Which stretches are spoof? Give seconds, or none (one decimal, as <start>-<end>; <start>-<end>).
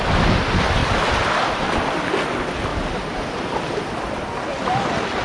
2.7-3.9